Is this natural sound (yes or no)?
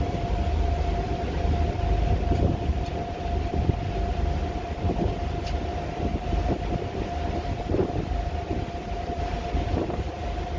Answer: yes